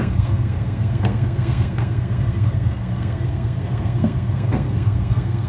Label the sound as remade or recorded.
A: remade